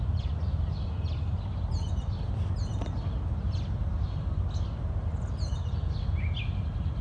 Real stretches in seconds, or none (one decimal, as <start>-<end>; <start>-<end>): 0.0-7.0